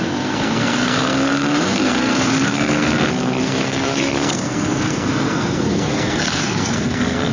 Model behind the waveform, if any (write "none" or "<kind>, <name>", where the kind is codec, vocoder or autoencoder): codec, SNAC